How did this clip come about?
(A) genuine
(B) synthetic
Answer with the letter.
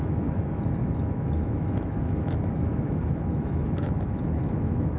B